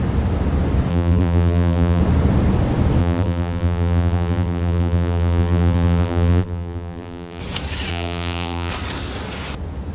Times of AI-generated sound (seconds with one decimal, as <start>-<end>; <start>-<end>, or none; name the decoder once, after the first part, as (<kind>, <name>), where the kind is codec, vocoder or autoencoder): 0.9-2.0 (vocoder, BigVGAN v2); 3.0-7.4; 7.9-8.7